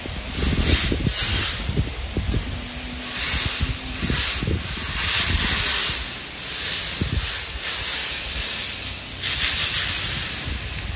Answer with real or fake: real